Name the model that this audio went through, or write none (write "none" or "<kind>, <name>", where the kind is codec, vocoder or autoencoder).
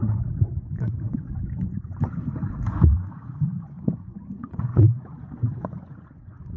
vocoder, Vocos